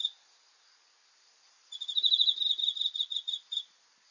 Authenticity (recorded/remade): recorded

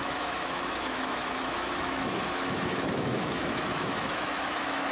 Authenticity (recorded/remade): remade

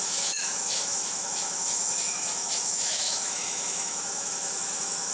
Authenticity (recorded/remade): remade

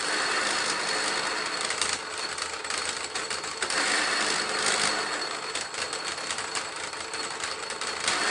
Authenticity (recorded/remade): recorded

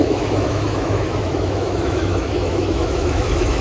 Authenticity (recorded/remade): remade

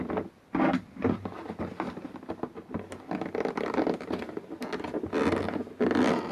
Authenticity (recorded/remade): recorded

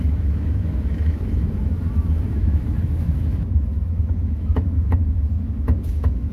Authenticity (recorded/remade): remade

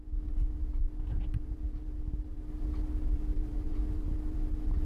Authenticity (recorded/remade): recorded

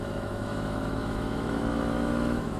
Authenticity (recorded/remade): remade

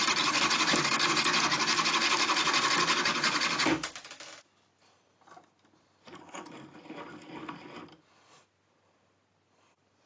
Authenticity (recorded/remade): recorded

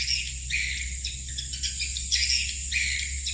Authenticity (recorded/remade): recorded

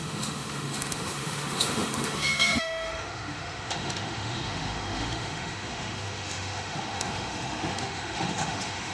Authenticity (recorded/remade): remade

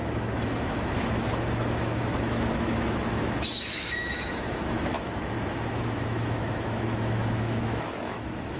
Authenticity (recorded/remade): remade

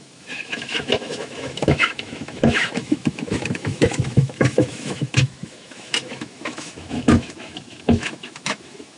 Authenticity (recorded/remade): remade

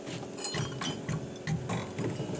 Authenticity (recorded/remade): recorded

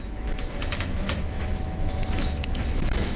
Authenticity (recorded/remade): remade